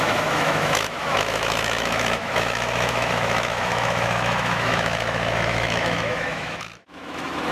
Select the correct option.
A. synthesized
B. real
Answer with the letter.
A